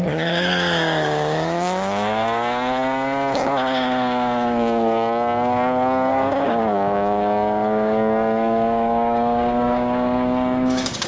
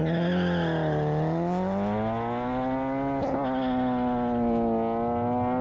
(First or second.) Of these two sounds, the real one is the second